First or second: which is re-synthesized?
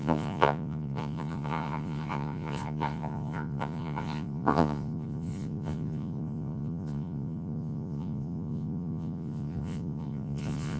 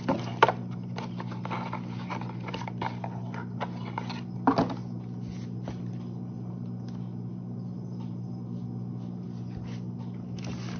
first